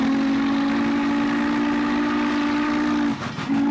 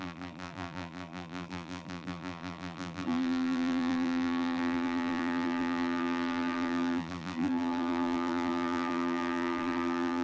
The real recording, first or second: first